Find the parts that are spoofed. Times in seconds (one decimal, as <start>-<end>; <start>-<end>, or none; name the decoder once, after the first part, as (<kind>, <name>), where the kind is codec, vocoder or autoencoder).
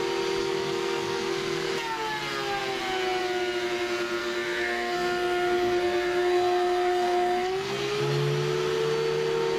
0.4-1.7 (codec, SNAC); 4.2-8.0